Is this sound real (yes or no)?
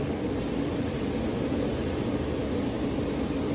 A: yes